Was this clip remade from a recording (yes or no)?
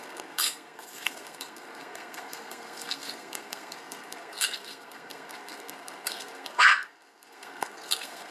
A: yes